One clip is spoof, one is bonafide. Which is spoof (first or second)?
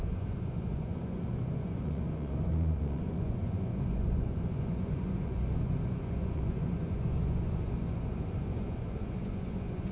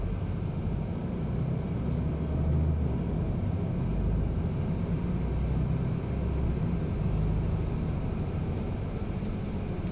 first